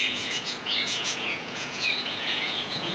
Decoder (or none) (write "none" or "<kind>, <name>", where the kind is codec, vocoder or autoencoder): vocoder, Vocos